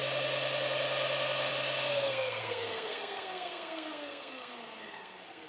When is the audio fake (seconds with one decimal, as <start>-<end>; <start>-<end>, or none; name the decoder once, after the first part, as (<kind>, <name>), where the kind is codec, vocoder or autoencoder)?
1.9-5.5 (codec, SNAC)